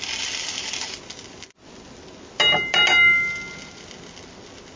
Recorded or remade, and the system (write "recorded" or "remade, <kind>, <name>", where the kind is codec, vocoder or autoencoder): recorded